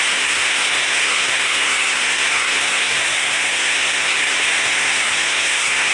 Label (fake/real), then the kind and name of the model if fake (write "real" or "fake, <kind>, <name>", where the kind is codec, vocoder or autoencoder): fake, codec, SNAC